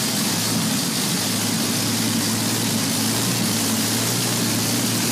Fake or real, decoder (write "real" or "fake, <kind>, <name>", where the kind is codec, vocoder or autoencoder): real